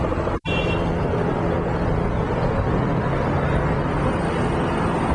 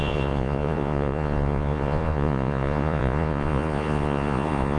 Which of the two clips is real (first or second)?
first